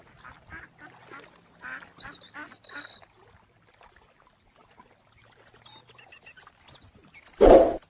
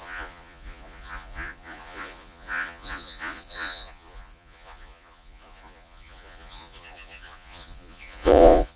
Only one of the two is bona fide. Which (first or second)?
first